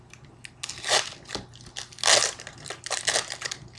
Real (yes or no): yes